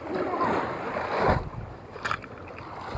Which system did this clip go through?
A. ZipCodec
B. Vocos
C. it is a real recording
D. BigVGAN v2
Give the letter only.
C